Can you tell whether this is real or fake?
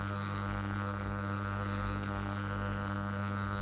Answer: fake